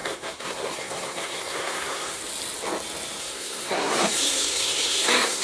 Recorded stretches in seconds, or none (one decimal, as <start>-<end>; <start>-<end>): 2.2-3.2